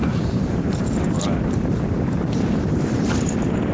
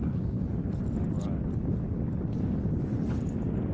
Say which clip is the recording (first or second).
second